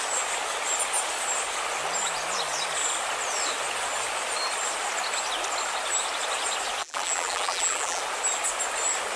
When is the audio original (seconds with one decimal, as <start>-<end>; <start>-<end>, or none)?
0.0-6.8; 8.0-9.2